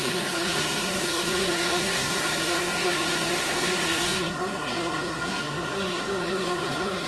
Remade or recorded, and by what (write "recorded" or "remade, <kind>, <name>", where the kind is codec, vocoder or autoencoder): remade, codec, SNAC